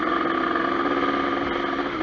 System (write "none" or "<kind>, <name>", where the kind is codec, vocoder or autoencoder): none